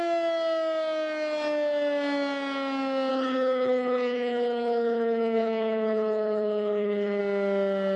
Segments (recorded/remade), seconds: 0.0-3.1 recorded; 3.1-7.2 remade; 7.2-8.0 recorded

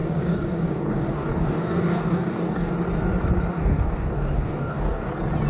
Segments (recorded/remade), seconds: 0.0-2.7 remade; 2.7-3.5 recorded; 3.5-5.1 remade; 5.1-5.5 recorded

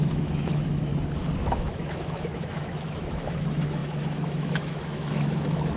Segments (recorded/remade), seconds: 0.0-0.9 remade; 0.9-1.4 recorded; 1.4-5.8 remade

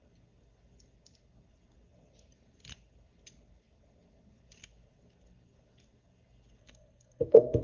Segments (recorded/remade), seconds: 0.0-6.6 recorded; 6.6-7.6 remade

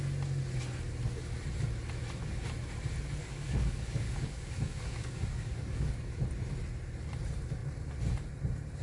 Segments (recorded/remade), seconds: 0.0-3.2 recorded; 3.2-6.2 remade; 6.2-8.8 recorded